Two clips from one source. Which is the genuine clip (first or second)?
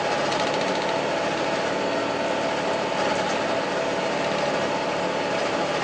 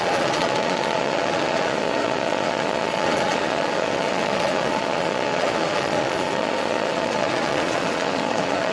first